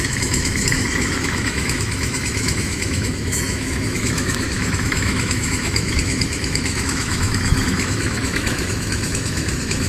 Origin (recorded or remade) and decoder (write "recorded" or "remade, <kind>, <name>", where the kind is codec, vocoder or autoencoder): remade, autoencoder, DAC-VAE